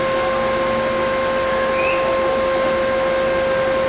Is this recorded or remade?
recorded